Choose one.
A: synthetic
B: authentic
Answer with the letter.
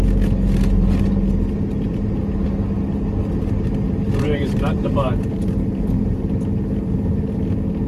B